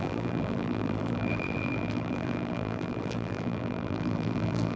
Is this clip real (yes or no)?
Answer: no